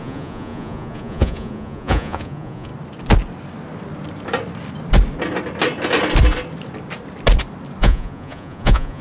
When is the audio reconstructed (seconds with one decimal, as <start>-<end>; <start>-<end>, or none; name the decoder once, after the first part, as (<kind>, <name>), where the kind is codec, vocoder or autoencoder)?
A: 0.0-2.7 (vocoder, Vocos); 7.8-9.0